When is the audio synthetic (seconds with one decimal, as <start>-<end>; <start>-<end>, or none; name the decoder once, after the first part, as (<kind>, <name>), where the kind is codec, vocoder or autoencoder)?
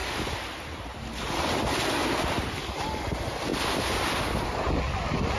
none